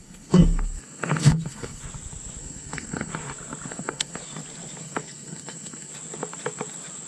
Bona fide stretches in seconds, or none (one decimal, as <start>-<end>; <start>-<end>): 1.8-2.4; 3.1-3.7; 4.2-4.8; 5.9-7.1